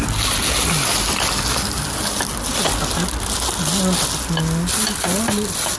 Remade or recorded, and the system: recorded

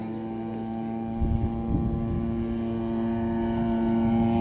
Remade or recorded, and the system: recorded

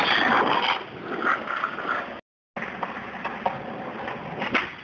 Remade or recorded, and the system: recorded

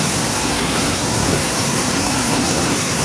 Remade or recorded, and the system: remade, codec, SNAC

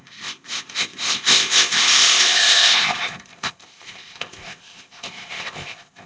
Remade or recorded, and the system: remade, codec, ZipCodec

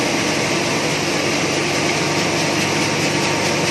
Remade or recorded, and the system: recorded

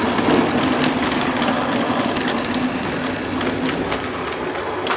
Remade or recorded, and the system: recorded